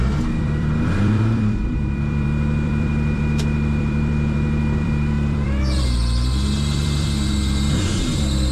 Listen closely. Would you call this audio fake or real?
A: fake